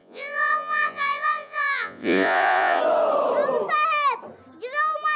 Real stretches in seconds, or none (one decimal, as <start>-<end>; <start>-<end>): 2.8-5.2